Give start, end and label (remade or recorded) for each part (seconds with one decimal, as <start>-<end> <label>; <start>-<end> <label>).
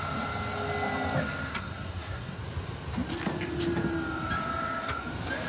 0.0-1.5 recorded; 1.5-2.4 remade; 2.4-5.5 recorded